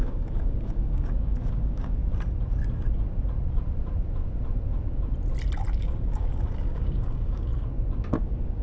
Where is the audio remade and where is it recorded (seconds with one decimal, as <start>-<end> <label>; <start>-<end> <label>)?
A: 0.0-2.0 remade; 2.0-5.7 recorded; 5.7-7.5 remade; 7.5-8.1 recorded; 8.1-8.6 remade